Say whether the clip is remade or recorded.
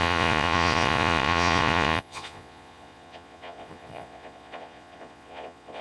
remade